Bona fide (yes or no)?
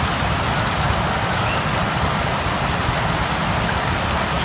yes